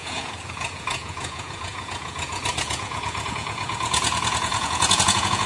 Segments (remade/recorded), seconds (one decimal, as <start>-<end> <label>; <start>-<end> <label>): 0.0-5.5 remade